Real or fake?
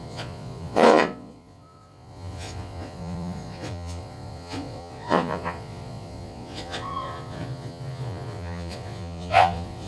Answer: fake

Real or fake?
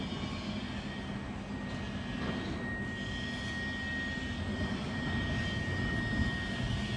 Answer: real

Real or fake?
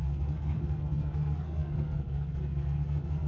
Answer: fake